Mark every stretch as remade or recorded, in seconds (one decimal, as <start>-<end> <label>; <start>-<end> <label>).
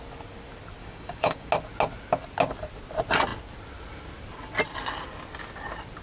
0.0-0.8 recorded; 0.8-1.5 remade; 1.5-6.0 recorded